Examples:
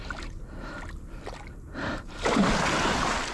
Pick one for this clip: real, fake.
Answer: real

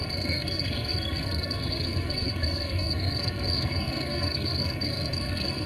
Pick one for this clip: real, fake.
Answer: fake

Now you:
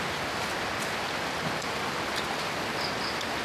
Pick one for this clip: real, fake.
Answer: real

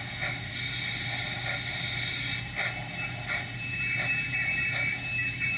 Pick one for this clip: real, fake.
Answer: real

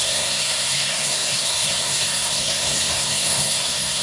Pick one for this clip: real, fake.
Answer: fake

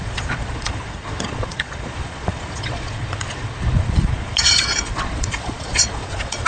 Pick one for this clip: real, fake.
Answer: fake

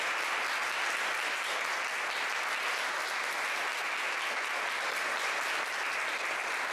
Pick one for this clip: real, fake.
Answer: real